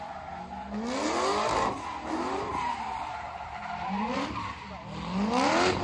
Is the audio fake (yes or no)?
no